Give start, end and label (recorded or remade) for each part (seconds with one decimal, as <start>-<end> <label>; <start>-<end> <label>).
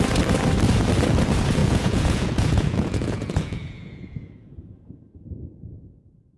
0.0-1.6 recorded; 1.6-4.9 remade; 4.9-6.4 recorded